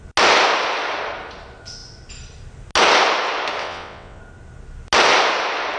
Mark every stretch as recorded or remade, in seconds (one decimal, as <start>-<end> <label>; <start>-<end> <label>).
0.0-3.6 recorded; 3.6-4.2 remade; 4.2-5.8 recorded